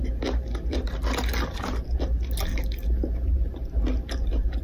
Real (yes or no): yes